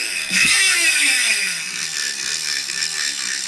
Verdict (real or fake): fake